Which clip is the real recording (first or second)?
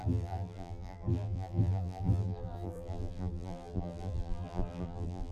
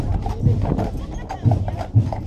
second